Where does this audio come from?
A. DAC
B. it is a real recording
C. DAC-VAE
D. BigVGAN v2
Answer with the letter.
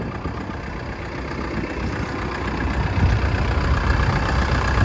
B